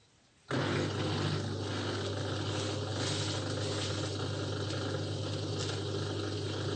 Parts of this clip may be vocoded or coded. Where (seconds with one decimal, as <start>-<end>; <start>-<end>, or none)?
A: none